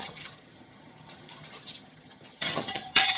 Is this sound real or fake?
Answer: fake